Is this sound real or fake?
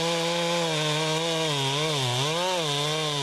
real